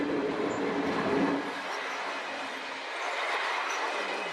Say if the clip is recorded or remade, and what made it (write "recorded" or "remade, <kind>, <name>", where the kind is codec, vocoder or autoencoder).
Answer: recorded